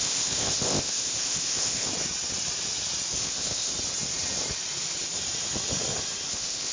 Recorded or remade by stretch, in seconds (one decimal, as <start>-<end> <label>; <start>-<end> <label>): 0.0-1.9 remade; 1.9-3.2 recorded; 3.2-3.7 remade; 3.7-6.3 recorded; 6.3-6.7 remade